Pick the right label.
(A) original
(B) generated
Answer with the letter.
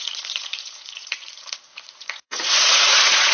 B